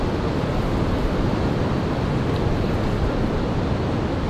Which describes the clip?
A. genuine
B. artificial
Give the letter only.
A